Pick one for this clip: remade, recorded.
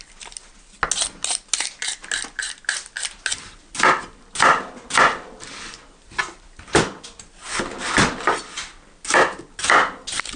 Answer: recorded